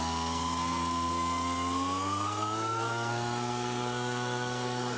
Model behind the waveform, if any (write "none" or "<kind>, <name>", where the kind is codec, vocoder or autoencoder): codec, SNAC